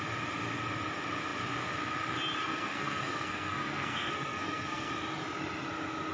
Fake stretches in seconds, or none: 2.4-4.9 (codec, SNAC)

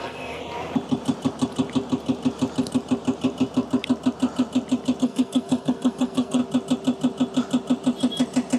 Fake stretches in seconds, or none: 0.0-0.4 (codec, SNAC); 5.0-6.4

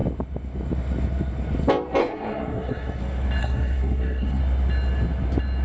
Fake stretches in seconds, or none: 2.0-3.0 (codec, SNAC); 3.4-4.4

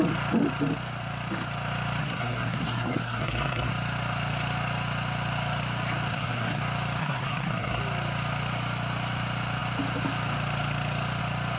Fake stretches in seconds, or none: 2.0-3.7 (codec, SNAC); 6.1-6.6; 7.0-7.8